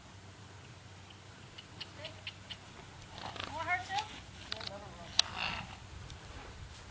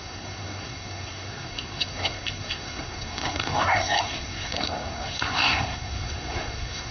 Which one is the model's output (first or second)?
second